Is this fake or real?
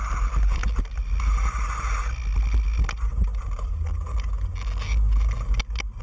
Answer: real